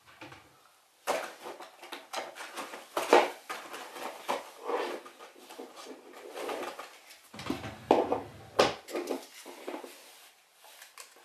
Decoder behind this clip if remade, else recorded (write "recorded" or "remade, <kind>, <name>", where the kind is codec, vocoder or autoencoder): recorded